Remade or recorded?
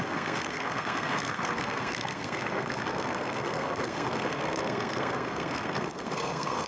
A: remade